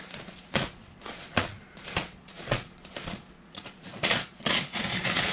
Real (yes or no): no